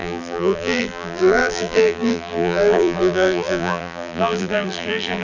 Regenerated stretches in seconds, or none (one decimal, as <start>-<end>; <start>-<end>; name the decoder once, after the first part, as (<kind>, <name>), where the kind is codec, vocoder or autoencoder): 0.0-5.2 (vocoder, BigVGAN v2)